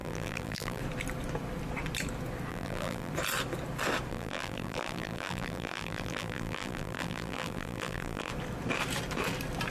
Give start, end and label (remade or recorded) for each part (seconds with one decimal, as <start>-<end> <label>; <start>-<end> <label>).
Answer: 0.0-0.8 remade; 0.8-2.5 recorded; 2.5-3.1 remade; 3.1-4.1 recorded; 4.1-8.3 remade; 8.3-9.7 recorded